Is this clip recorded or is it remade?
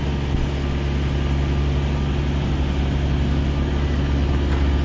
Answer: recorded